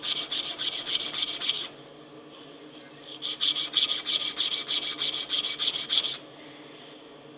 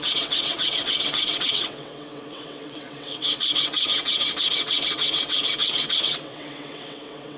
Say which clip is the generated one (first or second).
second